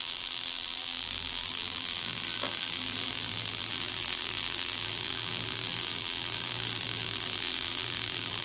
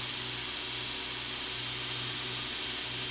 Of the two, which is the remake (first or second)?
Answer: first